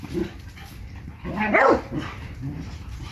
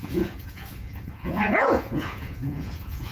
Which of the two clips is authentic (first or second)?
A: first